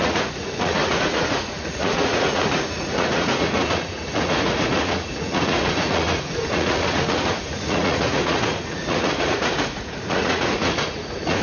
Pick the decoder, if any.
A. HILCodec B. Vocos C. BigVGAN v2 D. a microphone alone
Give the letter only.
B